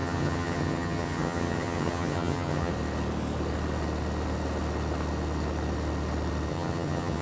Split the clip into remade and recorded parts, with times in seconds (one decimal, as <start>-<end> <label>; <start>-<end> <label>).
0.0-2.7 remade; 2.7-6.5 recorded; 6.5-7.2 remade